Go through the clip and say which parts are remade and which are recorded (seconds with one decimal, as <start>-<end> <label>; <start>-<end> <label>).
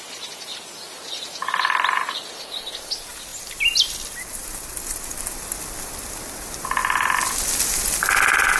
0.0-3.3 recorded; 3.3-5.2 remade; 5.2-6.8 recorded; 6.8-7.9 remade; 7.9-8.6 recorded